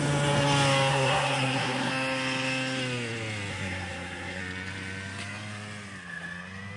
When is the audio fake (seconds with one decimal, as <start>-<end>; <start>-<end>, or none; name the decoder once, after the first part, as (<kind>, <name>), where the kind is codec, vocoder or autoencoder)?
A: 0.9-1.9 (codec, SNAC); 3.5-4.4